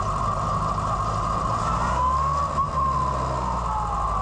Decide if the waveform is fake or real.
real